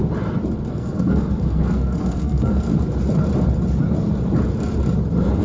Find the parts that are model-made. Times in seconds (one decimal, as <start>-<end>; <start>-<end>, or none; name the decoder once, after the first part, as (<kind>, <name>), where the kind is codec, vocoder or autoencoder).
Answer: 0.7-2.7 (codec, SNAC)